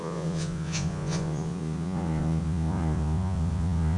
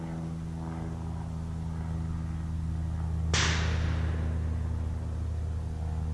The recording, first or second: second